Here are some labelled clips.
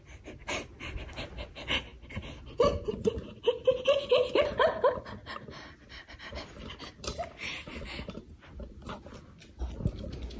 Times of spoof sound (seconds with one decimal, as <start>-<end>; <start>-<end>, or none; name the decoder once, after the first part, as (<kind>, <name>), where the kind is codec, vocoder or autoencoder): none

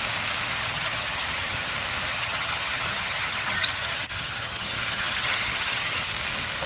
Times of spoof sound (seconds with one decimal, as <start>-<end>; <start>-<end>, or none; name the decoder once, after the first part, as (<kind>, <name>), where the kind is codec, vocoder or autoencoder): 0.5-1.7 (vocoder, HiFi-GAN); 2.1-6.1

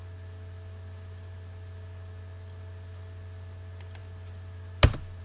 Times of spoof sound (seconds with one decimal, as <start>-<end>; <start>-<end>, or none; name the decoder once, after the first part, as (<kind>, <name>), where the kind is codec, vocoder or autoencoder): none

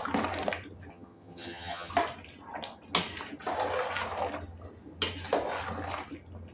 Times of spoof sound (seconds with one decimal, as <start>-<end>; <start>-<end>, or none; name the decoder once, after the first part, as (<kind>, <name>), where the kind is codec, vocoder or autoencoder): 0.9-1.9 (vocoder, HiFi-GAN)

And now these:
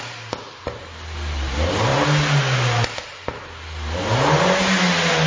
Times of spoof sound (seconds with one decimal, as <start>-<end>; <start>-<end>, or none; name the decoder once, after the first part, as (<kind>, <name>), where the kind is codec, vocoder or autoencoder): none

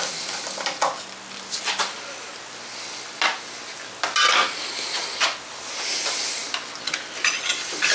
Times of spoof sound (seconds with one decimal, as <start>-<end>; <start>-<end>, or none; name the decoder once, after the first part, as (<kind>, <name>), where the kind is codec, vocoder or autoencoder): none

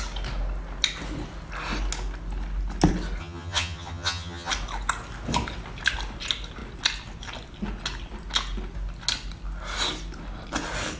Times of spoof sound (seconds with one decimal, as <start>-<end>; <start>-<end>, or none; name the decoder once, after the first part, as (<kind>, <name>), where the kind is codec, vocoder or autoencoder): 3.2-4.5 (vocoder, HiFi-GAN)

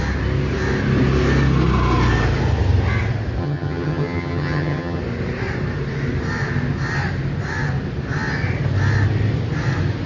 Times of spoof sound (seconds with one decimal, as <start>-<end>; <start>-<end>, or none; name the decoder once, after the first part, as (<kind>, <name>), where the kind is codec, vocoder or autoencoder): 3.4-5.0 (vocoder, HiFi-GAN)